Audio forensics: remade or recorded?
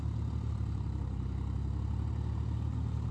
recorded